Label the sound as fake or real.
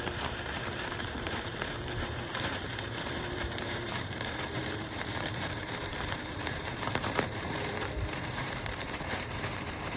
fake